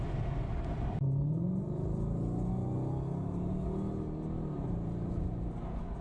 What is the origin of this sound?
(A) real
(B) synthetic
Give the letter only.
A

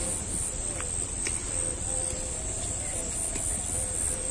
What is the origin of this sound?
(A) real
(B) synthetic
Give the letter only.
A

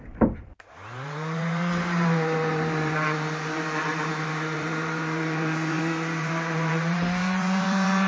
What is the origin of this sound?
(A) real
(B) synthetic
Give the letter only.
B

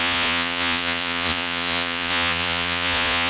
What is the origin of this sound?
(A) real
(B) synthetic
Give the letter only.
B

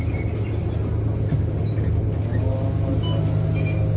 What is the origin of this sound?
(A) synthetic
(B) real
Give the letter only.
B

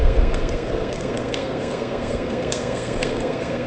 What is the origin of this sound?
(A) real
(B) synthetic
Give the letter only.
B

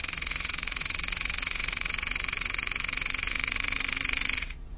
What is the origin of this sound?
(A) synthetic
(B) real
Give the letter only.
A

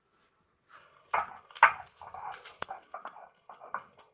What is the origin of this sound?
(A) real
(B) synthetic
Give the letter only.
A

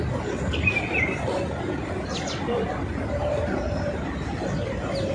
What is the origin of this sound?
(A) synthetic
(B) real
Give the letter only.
B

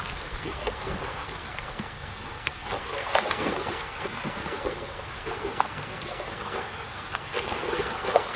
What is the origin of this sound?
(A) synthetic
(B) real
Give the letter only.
A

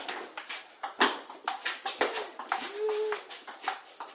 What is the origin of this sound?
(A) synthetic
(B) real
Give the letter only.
B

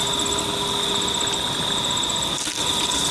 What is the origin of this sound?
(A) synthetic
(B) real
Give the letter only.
B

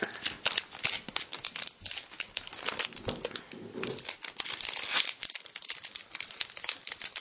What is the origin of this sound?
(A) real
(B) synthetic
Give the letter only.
A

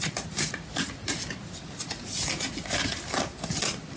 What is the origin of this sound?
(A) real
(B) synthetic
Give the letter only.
A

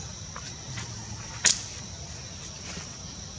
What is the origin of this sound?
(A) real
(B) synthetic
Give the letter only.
A